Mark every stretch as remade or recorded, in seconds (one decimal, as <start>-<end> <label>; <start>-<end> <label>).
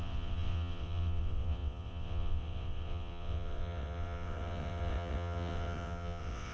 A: 0.0-6.5 remade